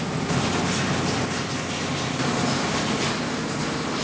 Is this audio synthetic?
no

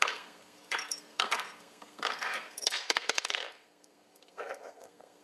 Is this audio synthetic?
yes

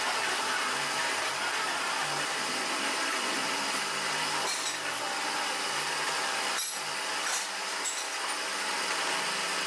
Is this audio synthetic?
no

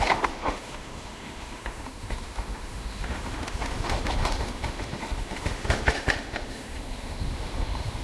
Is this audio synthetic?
yes